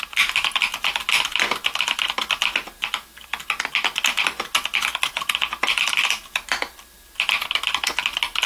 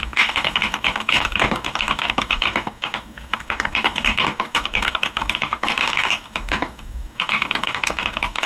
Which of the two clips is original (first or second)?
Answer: first